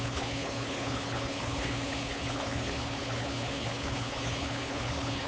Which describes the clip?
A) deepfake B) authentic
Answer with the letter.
A